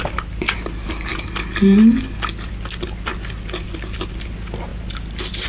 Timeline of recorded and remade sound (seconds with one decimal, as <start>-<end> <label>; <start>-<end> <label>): 0.0-5.5 recorded